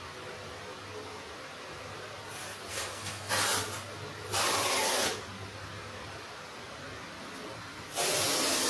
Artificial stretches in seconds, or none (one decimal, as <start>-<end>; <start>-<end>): 2.7-3.3